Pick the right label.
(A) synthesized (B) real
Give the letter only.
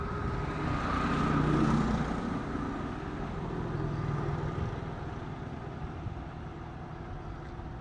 B